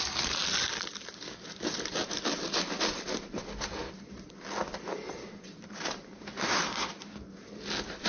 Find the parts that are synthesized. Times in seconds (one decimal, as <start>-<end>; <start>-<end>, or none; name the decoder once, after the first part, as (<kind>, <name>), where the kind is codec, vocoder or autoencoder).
0.0-0.4 (vocoder, BigVGAN v2); 1.3-8.1